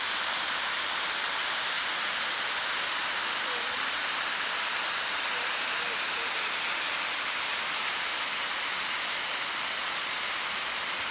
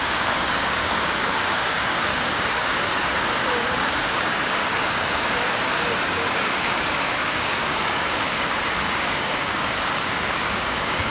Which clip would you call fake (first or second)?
second